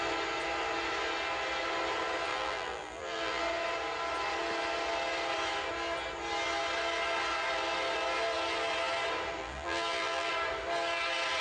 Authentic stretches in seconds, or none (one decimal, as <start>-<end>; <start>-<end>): 0.0-2.3; 3.4-9.4; 10.3-11.4

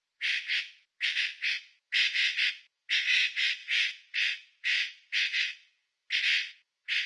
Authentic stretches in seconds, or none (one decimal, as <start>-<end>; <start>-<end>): 0.0-3.6; 5.4-7.1

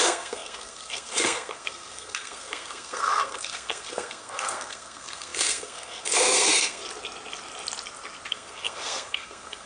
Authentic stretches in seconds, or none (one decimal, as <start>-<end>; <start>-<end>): 6.8-8.3

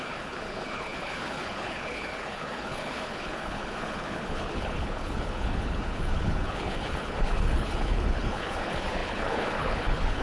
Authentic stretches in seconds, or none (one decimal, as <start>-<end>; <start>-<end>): none

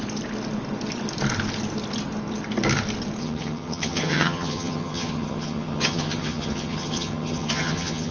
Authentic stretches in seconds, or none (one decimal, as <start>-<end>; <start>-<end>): 0.0-3.2

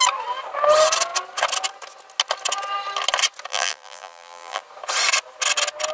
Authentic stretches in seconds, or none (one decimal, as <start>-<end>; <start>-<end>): 0.0-3.5; 4.6-5.9

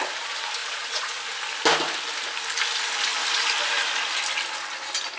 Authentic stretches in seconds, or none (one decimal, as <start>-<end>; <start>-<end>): 0.0-0.6; 1.2-5.2

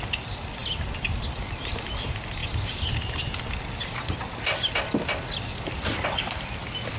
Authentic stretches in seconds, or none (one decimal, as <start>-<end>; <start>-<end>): 0.0-7.0